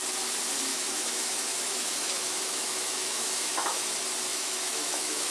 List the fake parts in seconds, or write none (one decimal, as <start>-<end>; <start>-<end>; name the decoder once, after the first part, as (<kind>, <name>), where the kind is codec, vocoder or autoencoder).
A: 0.7-3.9 (autoencoder, DAC-VAE); 4.3-5.3